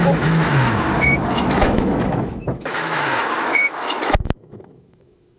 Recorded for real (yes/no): no